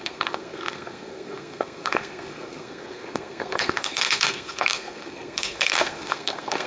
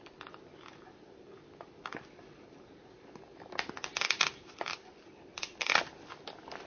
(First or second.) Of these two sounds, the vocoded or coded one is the first